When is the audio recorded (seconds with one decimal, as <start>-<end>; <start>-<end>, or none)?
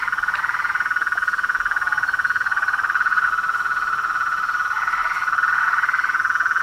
5.0-6.6